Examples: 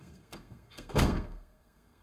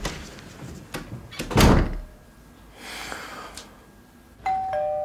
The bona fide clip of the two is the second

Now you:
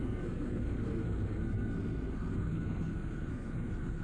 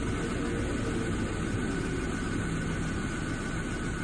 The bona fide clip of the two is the second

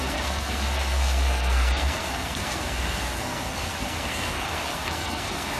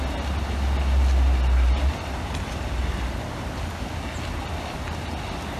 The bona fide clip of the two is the second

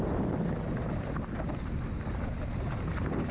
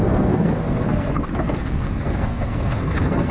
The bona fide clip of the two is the first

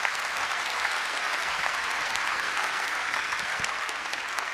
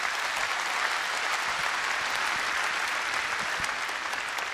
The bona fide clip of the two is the second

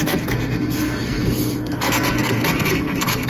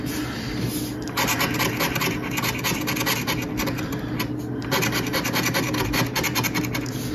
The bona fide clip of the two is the second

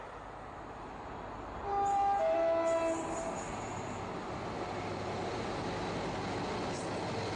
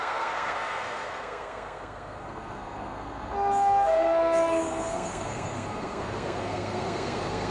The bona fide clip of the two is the first